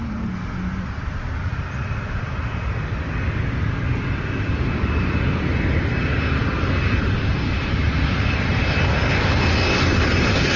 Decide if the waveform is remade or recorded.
recorded